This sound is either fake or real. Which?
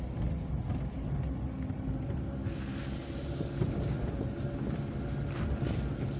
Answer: real